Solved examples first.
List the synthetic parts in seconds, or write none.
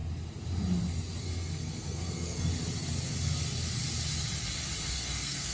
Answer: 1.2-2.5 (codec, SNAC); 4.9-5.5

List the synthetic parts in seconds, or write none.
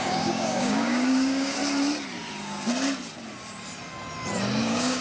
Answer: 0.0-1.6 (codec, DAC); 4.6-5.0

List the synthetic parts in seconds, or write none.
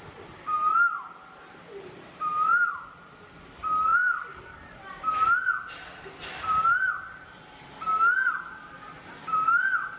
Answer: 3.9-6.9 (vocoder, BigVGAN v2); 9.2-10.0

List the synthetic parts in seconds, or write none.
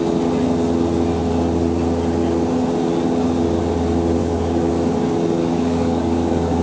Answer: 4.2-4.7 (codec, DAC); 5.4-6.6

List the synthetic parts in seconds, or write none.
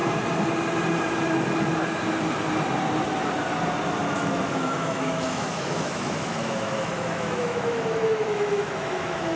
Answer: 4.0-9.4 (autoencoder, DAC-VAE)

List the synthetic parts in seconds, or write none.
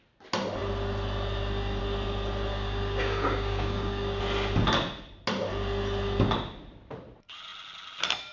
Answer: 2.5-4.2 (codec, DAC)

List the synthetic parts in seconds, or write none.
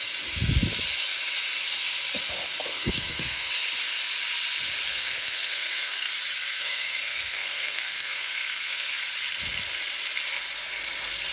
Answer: 2.7-3.5 (codec, SNAC); 4.9-6.1; 6.5-9.0